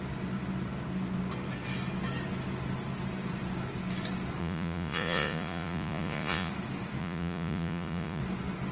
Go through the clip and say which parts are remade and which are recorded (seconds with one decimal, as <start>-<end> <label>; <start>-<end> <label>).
0.0-4.4 recorded; 4.4-6.5 remade; 6.5-7.0 recorded; 7.0-8.2 remade; 8.2-8.7 recorded